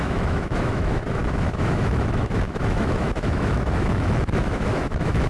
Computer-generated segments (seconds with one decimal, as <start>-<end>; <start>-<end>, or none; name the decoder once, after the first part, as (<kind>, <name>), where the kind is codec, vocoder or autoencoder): 0.0-5.3 (autoencoder, DAC-VAE)